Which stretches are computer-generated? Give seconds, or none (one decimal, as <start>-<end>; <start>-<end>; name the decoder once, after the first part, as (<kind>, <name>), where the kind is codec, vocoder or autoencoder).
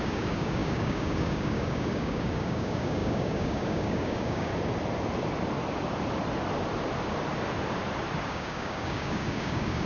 0.0-4.5 (codec, DAC); 8.2-9.9